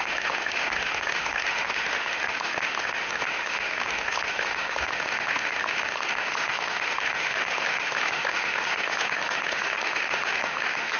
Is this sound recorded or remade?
remade